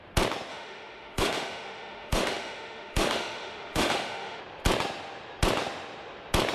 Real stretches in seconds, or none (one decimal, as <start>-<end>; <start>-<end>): 0.0-0.5; 4.4-6.5